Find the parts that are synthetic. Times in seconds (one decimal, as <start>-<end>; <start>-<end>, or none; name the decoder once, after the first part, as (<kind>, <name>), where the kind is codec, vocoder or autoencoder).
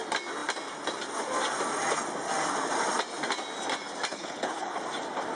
4.1-4.8 (codec, HILCodec)